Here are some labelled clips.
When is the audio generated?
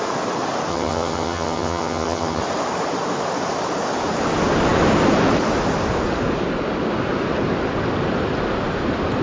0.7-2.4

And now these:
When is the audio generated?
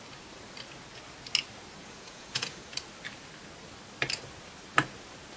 1.8-2.7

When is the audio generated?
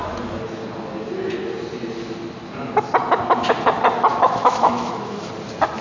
4.1-5.3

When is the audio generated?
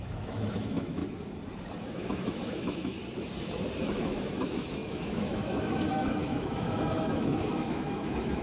0.0-1.0; 1.9-3.0; 3.8-8.4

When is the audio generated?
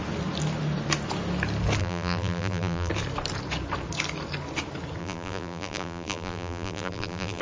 1.8-2.9; 5.0-7.4